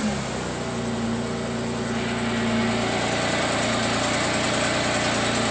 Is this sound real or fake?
real